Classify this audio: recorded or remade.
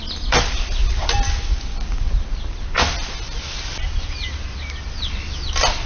recorded